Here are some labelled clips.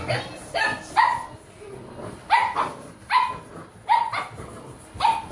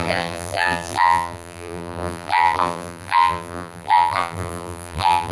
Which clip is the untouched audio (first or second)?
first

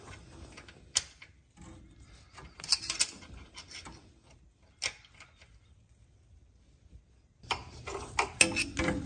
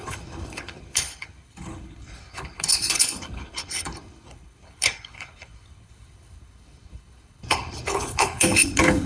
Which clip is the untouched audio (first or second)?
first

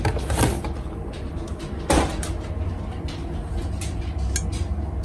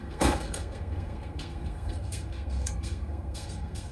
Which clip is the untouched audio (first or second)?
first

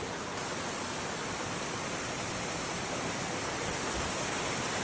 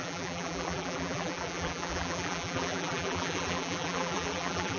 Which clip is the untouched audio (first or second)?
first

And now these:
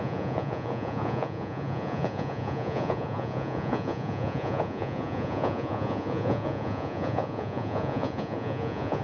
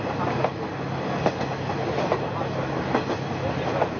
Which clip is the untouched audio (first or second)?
second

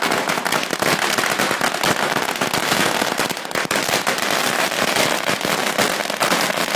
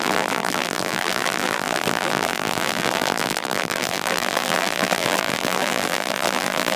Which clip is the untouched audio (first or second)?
first